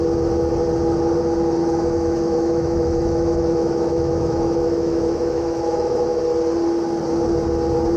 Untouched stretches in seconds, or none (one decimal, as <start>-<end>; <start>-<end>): 0.0-1.6; 6.2-8.0